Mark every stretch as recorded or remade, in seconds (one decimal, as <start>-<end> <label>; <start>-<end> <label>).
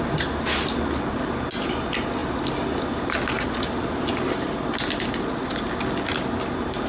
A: 0.0-6.9 recorded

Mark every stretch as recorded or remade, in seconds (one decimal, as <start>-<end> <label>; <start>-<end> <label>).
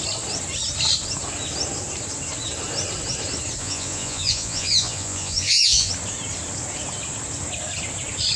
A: 0.0-3.6 recorded; 3.6-5.9 remade; 5.9-8.4 recorded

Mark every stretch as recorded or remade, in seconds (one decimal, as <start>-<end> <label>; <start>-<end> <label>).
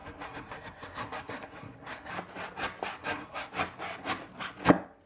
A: 0.0-2.1 remade; 2.1-3.0 recorded; 3.0-3.5 remade; 3.5-5.1 recorded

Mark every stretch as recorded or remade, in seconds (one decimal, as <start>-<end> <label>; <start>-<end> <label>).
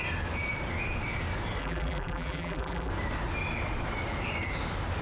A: 0.0-1.6 recorded; 1.6-2.9 remade; 2.9-5.0 recorded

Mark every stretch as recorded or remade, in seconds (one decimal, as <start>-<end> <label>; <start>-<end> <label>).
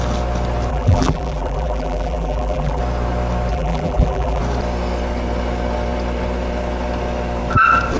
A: 0.0-0.7 recorded; 0.7-2.8 remade; 2.8-3.5 recorded; 3.5-4.4 remade; 4.4-8.0 recorded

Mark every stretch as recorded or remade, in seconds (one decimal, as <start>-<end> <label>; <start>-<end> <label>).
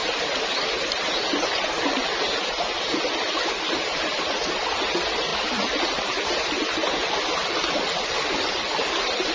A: 0.0-9.3 recorded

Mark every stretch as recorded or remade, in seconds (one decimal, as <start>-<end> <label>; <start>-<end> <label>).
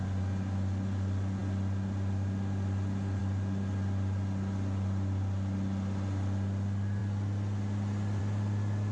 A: 0.0-8.9 recorded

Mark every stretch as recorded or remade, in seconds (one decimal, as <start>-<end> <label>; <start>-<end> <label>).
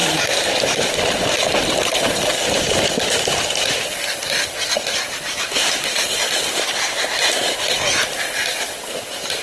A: 0.0-9.4 recorded